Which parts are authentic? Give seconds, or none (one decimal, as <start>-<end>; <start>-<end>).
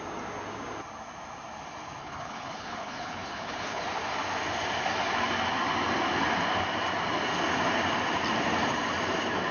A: 0.0-2.0; 3.8-9.5